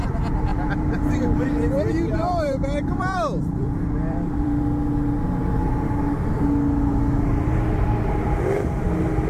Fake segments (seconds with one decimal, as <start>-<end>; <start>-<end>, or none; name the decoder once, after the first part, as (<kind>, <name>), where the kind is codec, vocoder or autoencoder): 0.5-4.6 (vocoder, BigVGAN v2)